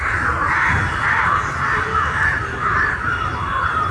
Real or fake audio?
fake